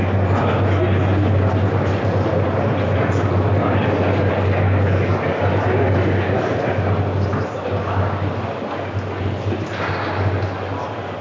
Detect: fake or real real